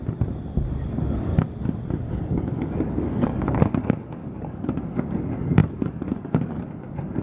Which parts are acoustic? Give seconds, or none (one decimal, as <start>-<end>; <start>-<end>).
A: 0.0-0.9; 1.3-2.0